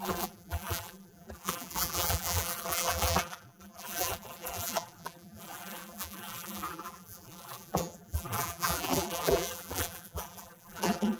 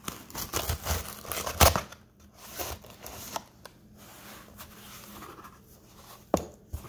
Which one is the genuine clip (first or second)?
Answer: second